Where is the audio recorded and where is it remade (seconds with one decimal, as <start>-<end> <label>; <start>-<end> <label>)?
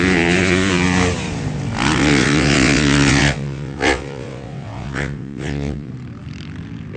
0.0-2.0 recorded; 2.0-5.9 remade; 5.9-7.0 recorded